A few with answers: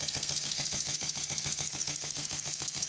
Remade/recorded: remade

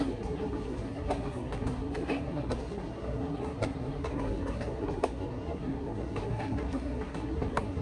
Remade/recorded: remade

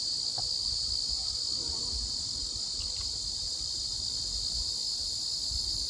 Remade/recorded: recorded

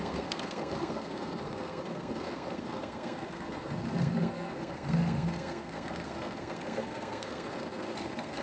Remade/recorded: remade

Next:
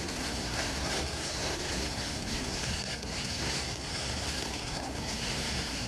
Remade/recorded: remade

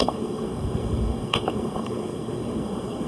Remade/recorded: remade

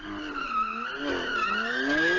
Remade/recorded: recorded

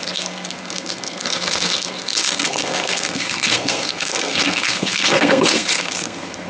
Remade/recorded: remade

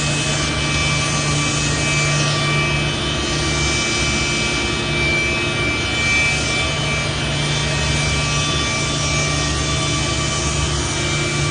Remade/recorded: recorded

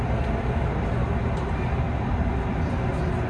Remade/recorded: recorded